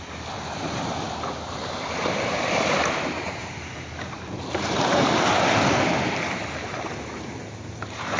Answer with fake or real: fake